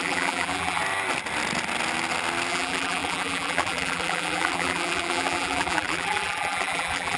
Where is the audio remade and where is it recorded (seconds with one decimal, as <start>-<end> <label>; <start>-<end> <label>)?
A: 0.0-0.8 remade; 0.8-2.5 recorded; 2.5-7.2 remade